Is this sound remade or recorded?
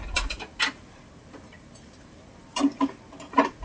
remade